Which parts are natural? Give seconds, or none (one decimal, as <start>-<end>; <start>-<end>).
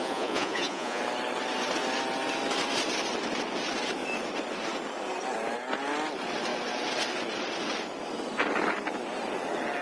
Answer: 1.0-9.8